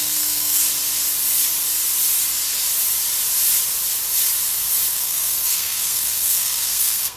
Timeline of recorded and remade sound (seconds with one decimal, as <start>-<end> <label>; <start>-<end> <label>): 0.0-0.6 remade; 0.6-4.9 recorded; 4.9-7.2 remade